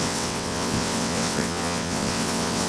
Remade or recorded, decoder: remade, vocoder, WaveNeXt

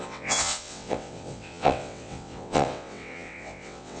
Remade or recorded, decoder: remade, vocoder, WaveNeXt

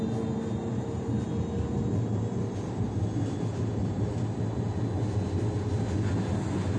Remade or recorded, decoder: recorded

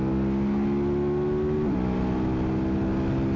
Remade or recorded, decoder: recorded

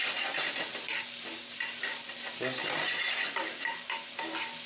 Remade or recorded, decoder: recorded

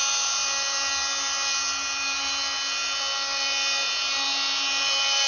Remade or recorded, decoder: recorded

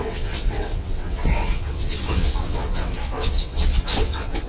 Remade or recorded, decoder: remade, vocoder, WaveNeXt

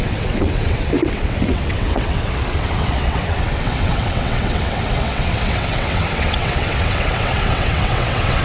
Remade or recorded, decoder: remade, vocoder, WaveNeXt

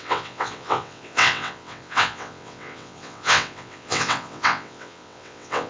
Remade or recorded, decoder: remade, vocoder, WaveNeXt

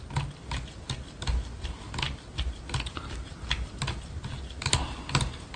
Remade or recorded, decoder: recorded